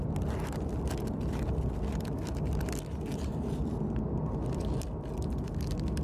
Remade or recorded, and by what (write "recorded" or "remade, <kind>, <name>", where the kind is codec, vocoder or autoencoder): recorded